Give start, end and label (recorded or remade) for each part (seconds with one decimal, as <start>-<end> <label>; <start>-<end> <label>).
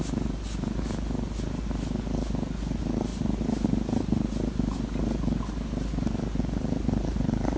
0.0-7.6 recorded